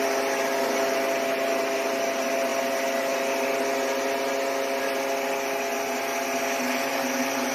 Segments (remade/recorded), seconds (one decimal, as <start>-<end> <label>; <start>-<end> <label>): 0.0-7.5 recorded

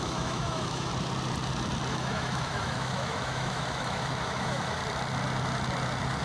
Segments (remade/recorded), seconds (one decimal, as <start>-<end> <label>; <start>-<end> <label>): 0.0-0.9 remade; 0.9-1.9 recorded; 1.9-4.8 remade; 4.8-6.2 recorded